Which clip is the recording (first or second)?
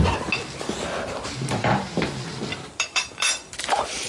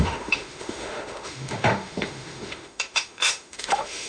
first